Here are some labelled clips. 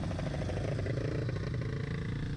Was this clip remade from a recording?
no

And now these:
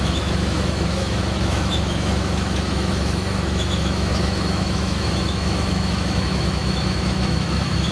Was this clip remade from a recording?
yes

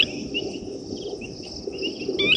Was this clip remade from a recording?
no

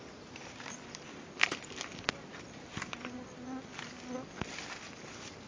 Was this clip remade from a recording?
no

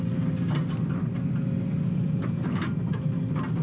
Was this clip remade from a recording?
no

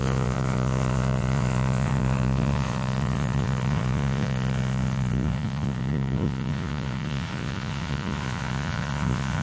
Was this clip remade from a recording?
yes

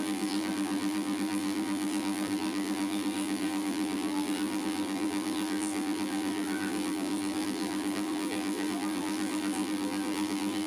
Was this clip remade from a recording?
yes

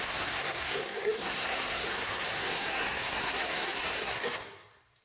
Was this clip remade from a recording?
yes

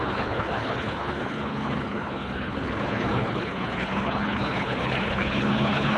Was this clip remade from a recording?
yes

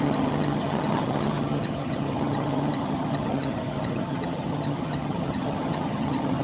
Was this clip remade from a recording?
yes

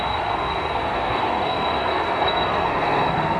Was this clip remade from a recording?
yes